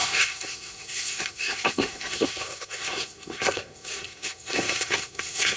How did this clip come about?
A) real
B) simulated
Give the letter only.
B